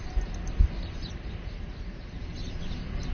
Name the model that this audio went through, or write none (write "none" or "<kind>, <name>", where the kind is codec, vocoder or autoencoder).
none